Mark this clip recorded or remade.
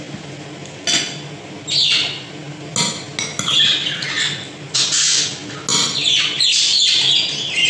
recorded